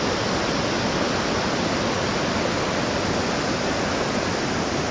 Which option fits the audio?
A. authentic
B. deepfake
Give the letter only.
A